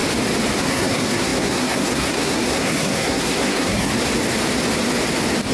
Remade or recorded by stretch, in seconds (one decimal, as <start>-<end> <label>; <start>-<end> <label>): 0.0-0.6 recorded; 0.6-3.9 remade; 3.9-5.5 recorded